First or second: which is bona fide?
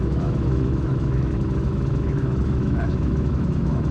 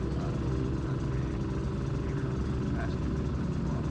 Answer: second